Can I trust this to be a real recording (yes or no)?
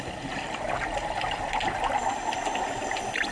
yes